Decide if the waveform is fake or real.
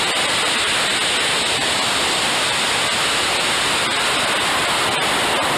real